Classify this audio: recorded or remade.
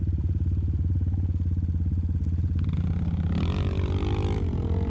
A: recorded